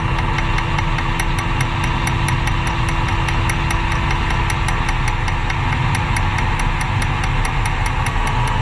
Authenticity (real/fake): real